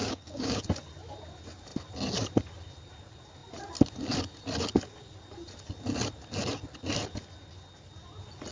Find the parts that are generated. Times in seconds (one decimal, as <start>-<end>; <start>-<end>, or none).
0.0-0.6